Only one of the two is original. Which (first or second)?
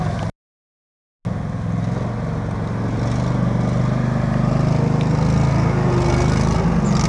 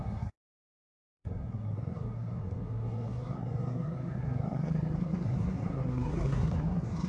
first